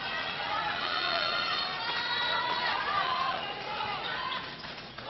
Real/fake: fake